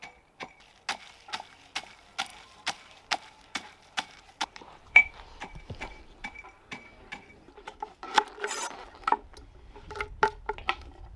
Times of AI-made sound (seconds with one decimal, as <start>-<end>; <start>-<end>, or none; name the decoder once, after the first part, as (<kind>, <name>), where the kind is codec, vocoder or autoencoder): 2.3-6.8 (vocoder, BigVGAN v2); 7.3-8.2